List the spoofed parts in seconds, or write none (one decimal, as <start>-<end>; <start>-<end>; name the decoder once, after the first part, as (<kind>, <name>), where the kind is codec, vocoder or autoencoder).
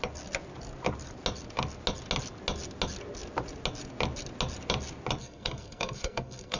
5.2-6.6 (codec, SNAC)